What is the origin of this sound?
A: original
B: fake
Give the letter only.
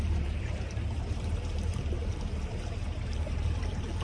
B